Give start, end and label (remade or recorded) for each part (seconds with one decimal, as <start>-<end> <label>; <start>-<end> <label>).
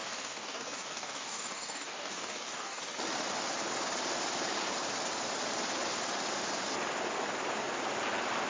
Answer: 0.0-2.8 remade; 2.8-8.5 recorded